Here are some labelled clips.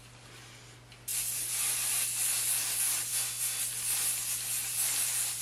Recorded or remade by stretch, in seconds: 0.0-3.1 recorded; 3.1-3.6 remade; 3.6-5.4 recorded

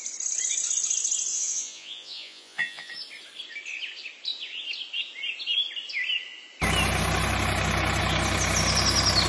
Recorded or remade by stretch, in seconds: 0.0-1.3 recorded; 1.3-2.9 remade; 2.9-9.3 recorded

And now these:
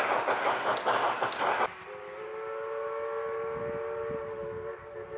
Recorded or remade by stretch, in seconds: 0.0-5.2 recorded

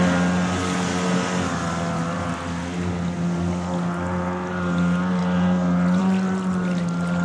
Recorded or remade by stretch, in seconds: 0.0-7.2 recorded

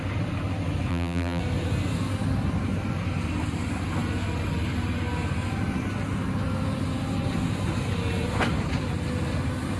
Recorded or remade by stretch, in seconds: 0.0-0.9 recorded; 0.9-1.4 remade; 1.4-9.8 recorded